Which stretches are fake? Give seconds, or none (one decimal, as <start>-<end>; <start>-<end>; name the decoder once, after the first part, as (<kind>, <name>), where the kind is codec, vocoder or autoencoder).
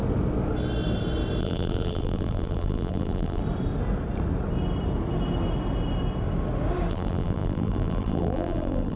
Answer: 1.4-3.4 (vocoder, BigVGAN v2); 6.9-9.0